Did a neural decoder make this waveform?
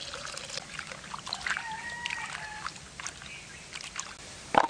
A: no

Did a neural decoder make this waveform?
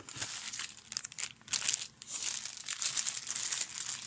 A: no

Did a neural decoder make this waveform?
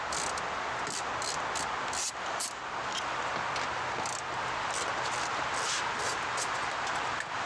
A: no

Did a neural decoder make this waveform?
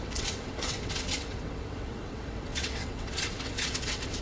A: yes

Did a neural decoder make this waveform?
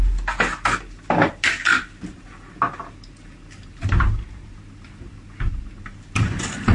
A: no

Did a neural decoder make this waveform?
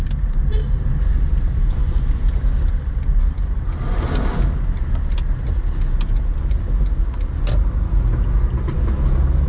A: no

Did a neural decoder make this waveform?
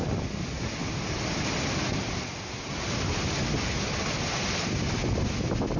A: no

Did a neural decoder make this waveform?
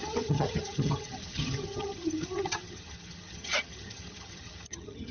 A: yes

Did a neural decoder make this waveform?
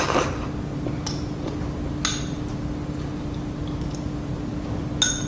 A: no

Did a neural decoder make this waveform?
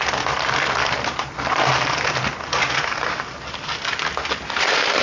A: no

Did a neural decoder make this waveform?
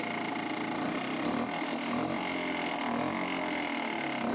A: no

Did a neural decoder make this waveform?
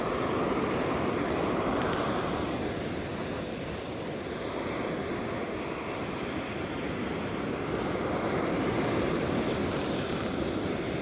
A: no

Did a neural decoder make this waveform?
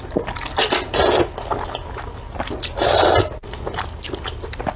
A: no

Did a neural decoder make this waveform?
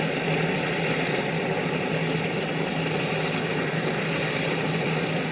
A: no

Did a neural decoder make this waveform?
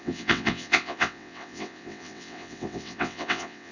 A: yes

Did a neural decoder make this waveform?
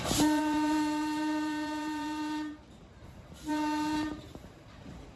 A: yes